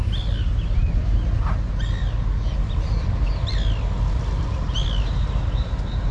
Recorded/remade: recorded